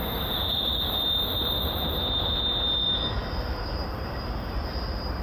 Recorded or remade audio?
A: recorded